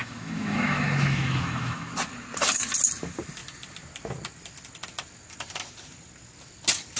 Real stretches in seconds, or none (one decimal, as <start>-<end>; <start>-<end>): 1.9-7.0